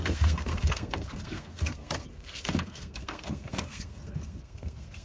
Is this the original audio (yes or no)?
no